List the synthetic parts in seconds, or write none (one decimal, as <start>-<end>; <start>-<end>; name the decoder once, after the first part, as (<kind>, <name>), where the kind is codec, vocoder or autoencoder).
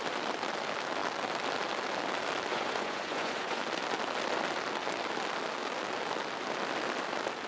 2.5-3.6 (vocoder, Vocos)